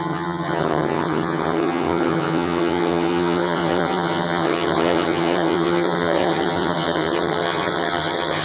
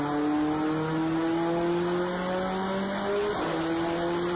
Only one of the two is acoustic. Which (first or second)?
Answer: second